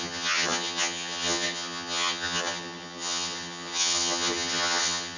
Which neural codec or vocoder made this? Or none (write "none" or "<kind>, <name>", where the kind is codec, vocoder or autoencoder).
vocoder, HiFi-GAN